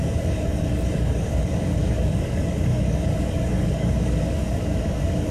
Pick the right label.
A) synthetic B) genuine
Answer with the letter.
A